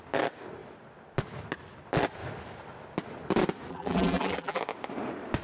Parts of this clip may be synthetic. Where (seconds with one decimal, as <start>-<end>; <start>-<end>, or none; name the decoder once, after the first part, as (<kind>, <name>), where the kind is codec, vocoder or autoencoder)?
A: 3.7-4.6 (vocoder, BigVGAN v2)